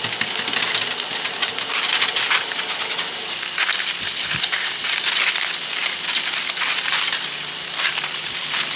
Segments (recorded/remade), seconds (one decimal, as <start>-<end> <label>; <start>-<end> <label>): 0.0-8.8 recorded